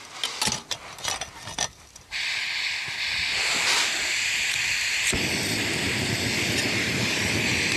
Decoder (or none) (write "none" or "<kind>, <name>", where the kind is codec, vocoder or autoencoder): none